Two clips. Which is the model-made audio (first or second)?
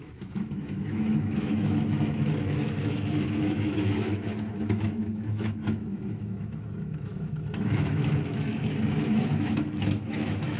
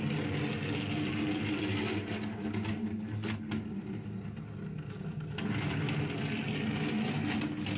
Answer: first